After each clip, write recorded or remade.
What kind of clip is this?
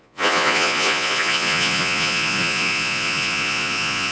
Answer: remade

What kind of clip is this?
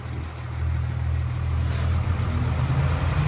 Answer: recorded